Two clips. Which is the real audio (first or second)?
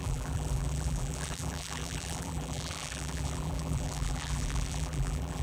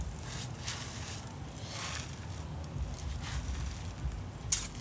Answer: second